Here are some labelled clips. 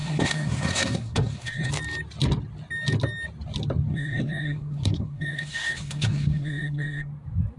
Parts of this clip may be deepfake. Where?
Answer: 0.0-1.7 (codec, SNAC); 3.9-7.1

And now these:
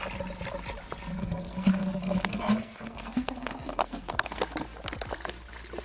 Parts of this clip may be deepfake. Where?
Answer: 1.2-4.4 (codec, SNAC)

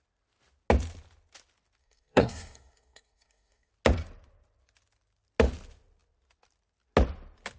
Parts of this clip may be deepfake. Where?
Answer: 1.8-3.7 (codec, SNAC)